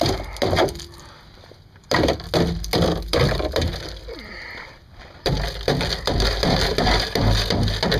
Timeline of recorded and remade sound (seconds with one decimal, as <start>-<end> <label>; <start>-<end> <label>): 0.0-8.0 recorded